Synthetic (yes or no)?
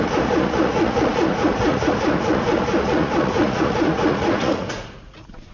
yes